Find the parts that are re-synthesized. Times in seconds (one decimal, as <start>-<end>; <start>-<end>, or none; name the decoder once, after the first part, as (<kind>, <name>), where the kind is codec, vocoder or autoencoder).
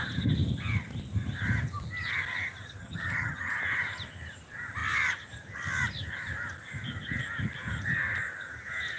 2.8-3.5 (vocoder, HiFi-GAN)